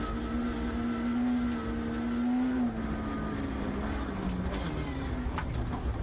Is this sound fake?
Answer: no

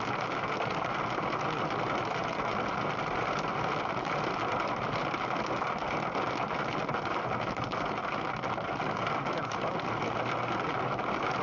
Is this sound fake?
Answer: no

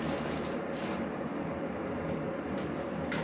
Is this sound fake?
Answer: yes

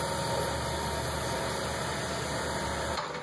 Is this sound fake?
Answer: no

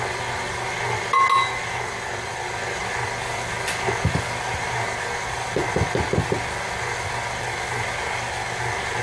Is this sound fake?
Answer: no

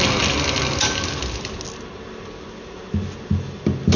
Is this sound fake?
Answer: no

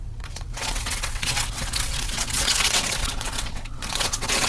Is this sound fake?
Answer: yes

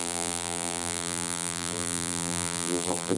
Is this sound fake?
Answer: yes